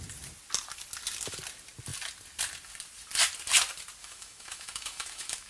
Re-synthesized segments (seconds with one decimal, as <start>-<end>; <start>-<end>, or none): 4.0-5.5